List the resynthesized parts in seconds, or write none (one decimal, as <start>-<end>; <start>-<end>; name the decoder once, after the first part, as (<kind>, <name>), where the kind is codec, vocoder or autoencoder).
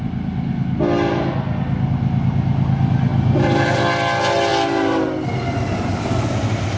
3.1-3.8 (vocoder, BigVGAN v2)